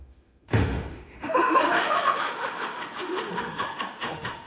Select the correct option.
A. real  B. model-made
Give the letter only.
B